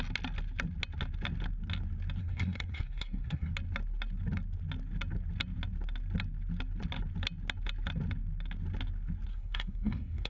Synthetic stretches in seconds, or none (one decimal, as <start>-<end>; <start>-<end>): 2.2-3.5; 9.3-10.3